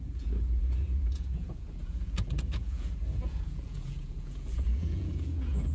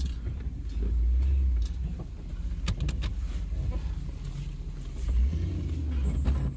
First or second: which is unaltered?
second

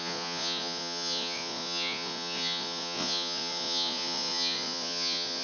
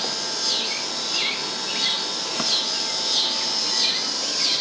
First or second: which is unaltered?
second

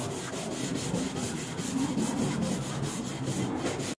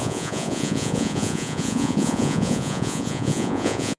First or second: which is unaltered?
first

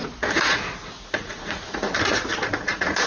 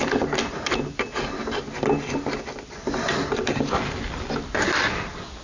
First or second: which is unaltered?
second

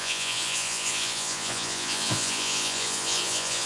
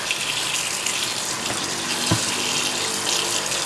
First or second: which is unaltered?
second